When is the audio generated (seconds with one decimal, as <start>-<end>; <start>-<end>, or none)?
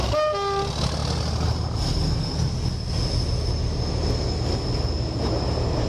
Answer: none